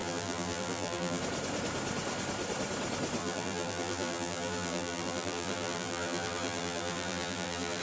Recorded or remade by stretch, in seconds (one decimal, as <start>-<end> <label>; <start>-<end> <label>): 0.0-1.2 remade; 1.2-3.2 recorded; 3.2-7.8 remade